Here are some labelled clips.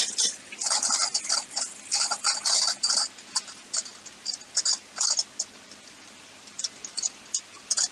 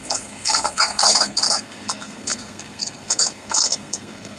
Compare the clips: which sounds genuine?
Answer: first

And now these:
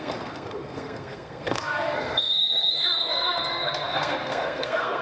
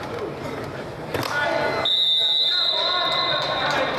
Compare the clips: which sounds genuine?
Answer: second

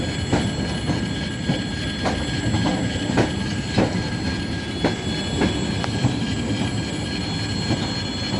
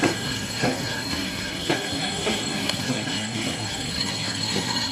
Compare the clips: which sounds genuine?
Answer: first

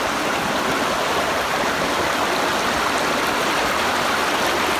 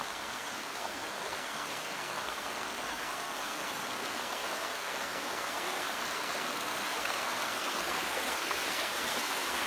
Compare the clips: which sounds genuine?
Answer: first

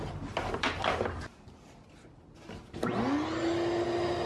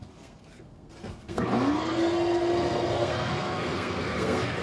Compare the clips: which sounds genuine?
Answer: first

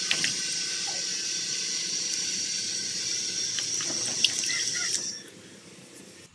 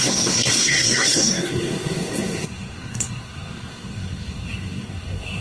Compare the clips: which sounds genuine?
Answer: first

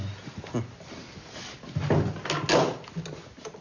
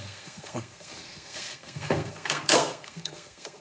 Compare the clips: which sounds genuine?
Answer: first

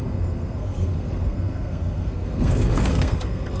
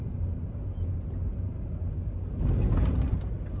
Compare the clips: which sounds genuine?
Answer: second